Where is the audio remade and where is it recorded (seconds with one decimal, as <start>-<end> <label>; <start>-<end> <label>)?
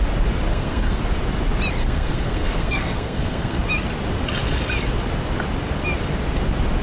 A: 0.0-0.5 recorded; 0.5-1.0 remade; 1.0-1.8 recorded; 1.8-3.6 remade; 3.6-6.8 recorded